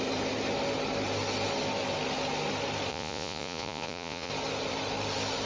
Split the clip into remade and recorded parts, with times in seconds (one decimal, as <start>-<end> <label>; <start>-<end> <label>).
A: 0.0-2.9 recorded; 2.9-4.3 remade; 4.3-5.5 recorded